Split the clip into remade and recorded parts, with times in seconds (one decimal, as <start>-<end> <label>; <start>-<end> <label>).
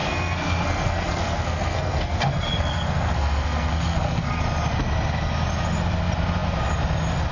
0.0-4.4 remade; 4.4-7.3 recorded